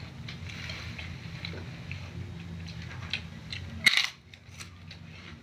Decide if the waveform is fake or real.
real